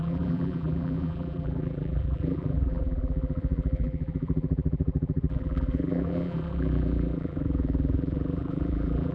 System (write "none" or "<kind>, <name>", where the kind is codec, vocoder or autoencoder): vocoder, BigVGAN v2